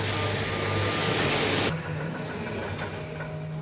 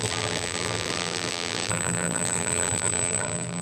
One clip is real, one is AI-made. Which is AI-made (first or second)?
second